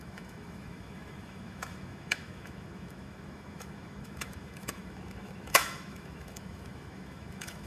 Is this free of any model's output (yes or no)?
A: no